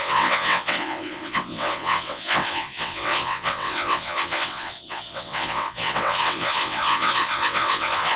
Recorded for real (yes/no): no